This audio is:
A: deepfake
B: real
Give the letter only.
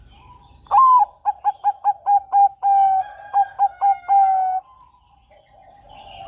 B